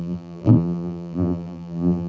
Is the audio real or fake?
fake